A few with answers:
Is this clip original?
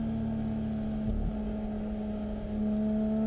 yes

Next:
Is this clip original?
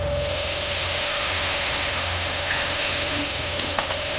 no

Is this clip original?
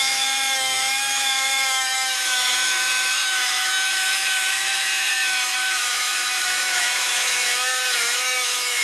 no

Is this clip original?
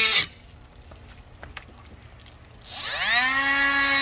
yes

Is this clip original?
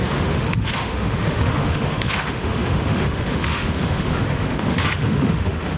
no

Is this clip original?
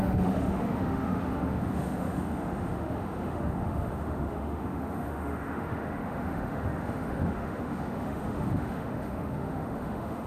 no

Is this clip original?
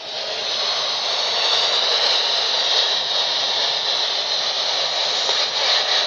yes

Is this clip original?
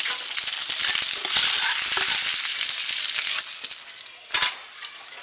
yes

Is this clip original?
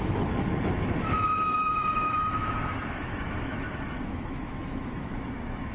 no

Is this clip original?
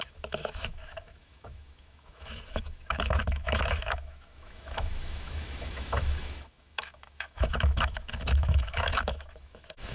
no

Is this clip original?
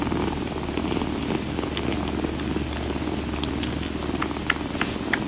yes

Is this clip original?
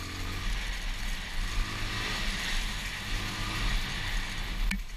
yes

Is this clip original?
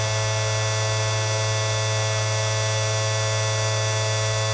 yes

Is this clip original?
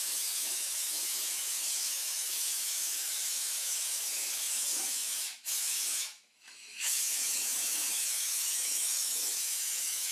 no